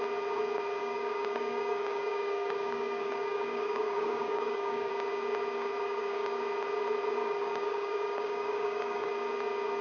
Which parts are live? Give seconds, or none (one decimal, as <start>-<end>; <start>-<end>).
0.0-0.8; 4.9-5.8; 6.4-7.2; 9.1-9.8